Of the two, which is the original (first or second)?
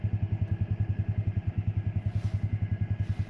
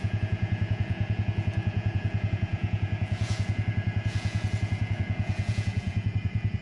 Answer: first